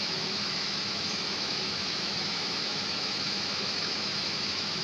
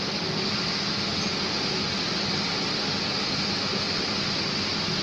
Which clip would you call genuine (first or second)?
second